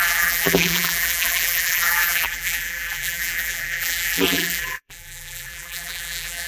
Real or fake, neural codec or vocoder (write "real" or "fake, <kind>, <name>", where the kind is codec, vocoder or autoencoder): fake, vocoder, BigVGAN v2